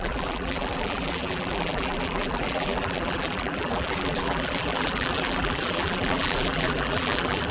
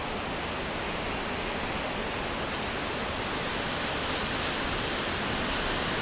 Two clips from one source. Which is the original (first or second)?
second